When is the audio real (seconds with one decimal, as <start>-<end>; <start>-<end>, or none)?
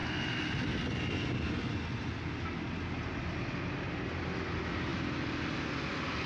0.0-6.3